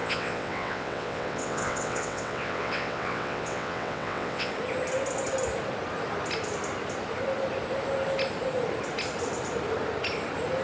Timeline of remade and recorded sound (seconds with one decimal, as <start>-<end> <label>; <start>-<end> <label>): 0.0-4.5 remade; 4.5-10.6 recorded